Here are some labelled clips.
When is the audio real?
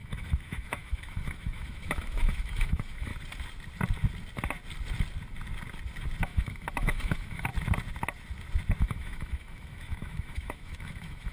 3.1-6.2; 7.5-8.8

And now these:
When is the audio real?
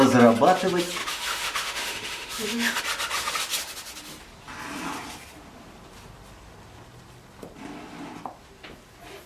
0.0-1.0; 2.8-9.3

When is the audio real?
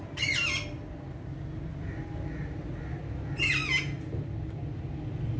0.0-5.4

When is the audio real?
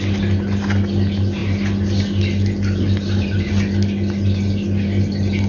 0.0-5.5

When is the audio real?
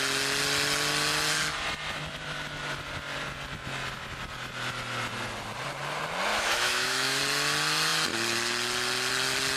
0.0-6.3; 7.2-9.6